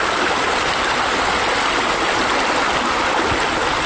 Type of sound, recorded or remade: recorded